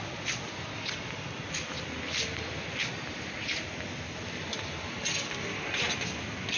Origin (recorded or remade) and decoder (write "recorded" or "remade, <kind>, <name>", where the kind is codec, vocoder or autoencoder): recorded